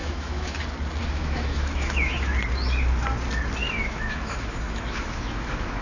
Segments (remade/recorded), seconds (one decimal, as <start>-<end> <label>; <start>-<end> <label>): 0.0-0.6 remade; 0.6-1.0 recorded; 1.0-2.4 remade; 2.4-3.6 recorded; 3.6-5.8 remade